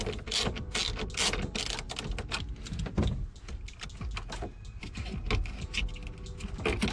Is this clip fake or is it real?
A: real